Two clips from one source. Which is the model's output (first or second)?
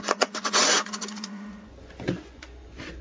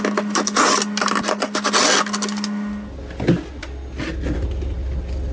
first